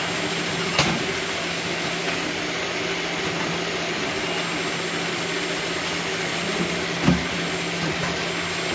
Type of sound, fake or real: real